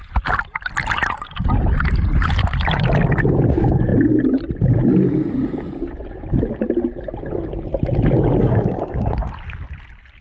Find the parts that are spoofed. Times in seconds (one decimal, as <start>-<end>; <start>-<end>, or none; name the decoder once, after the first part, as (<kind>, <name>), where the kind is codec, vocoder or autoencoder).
8.4-9.1 (codec, DAC)